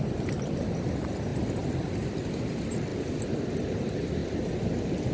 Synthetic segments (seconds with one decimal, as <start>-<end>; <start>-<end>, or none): none